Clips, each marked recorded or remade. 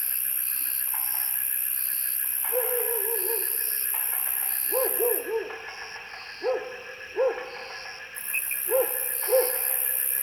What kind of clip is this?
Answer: recorded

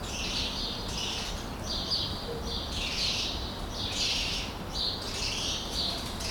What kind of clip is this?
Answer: recorded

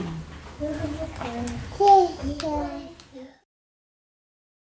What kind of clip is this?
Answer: recorded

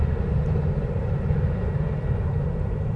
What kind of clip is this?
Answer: remade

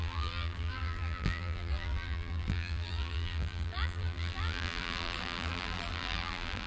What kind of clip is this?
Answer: remade